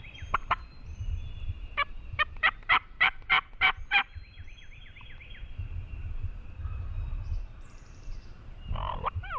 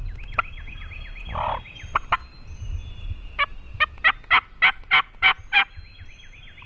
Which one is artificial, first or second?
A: first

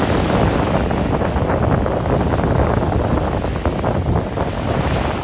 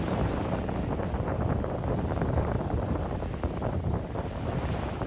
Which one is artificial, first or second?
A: second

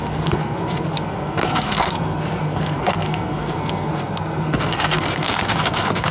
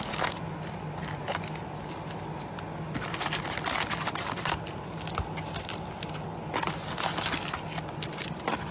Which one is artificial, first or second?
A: first